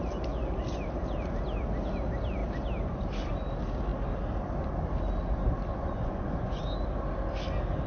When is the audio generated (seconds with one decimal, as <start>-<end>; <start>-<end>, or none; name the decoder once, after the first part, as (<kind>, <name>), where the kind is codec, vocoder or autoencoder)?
5.7-6.6 (vocoder, Vocos)